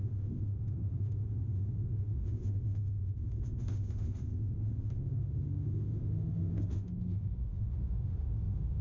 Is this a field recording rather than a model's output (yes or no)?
no